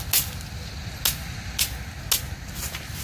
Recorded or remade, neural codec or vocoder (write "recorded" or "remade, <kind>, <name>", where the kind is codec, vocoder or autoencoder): recorded